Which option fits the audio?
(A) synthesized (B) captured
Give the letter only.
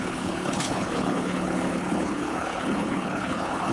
A